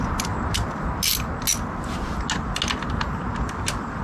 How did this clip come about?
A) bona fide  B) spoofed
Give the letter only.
A